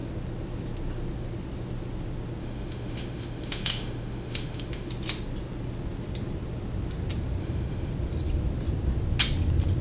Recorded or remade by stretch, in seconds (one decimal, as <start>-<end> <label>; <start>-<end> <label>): 0.0-2.4 recorded; 2.4-4.9 remade; 4.9-7.4 recorded; 7.4-7.9 remade; 7.9-9.8 recorded